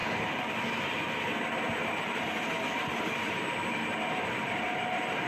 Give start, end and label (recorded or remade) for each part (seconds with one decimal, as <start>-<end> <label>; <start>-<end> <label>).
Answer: 0.0-0.5 remade; 0.5-1.8 recorded; 1.8-5.3 remade